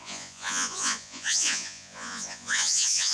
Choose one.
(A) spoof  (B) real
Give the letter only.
A